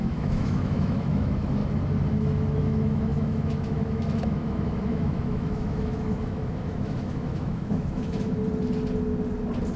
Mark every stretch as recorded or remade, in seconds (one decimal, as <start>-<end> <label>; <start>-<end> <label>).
0.0-1.6 remade; 1.6-2.1 recorded; 2.1-8.4 remade; 8.4-9.8 recorded